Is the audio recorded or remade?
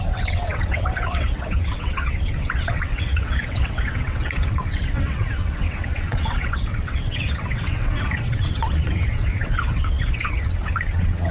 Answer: remade